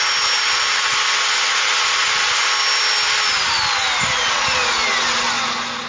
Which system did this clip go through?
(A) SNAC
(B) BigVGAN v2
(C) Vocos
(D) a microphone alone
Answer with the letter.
D